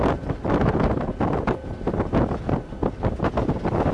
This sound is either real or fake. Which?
real